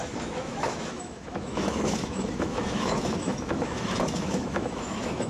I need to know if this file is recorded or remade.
remade